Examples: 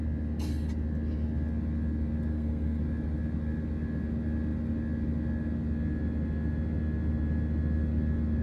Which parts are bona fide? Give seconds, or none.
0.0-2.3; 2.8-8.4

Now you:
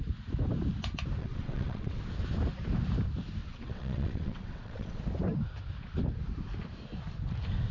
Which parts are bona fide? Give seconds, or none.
0.0-1.2; 2.0-3.4; 5.0-7.7

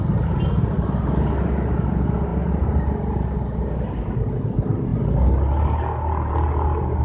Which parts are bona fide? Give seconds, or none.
0.0-7.0

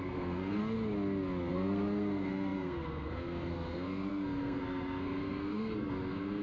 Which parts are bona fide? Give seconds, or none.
0.6-1.5

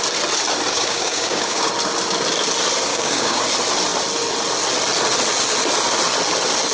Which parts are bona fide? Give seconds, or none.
0.0-0.7; 1.7-2.9; 3.4-6.7

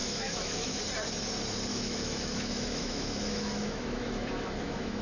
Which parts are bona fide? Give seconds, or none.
0.8-1.7

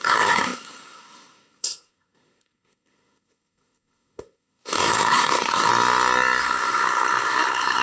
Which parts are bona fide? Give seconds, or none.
5.7-6.4